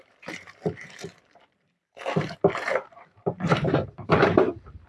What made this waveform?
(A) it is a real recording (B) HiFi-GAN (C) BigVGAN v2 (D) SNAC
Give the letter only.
C